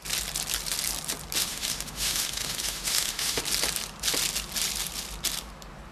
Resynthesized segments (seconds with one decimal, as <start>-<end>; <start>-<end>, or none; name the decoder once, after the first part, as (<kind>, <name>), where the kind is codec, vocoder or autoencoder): 1.4-3.4 (autoencoder, DAC-VAE)